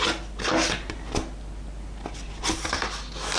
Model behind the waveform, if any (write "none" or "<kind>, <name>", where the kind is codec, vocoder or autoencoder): none